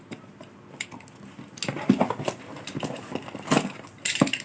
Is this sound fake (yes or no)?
no